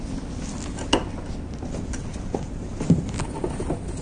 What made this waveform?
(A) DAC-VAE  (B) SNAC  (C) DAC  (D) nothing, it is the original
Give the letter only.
D